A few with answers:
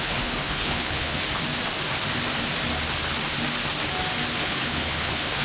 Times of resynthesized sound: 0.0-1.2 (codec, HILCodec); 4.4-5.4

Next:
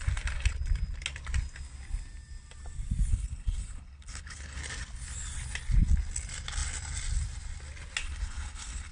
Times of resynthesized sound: 3.1-4.6 (codec, HILCodec); 8.0-8.9

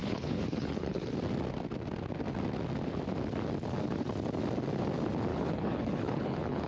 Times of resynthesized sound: 0.0-1.1 (codec, HILCodec); 5.3-6.7